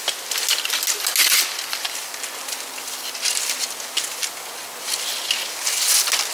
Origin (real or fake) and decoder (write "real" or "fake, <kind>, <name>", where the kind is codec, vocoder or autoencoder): real